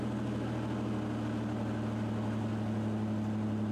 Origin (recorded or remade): recorded